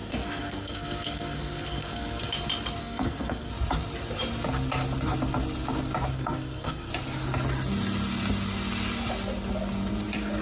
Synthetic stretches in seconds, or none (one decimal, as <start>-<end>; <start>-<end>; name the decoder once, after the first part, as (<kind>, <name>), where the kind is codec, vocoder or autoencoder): 0.0-2.3 (codec, SNAC); 2.8-3.5; 6.1-6.9